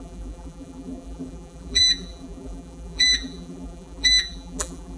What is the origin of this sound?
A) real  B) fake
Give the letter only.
B